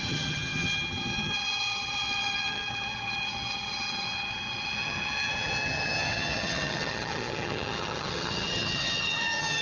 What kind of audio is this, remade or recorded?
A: remade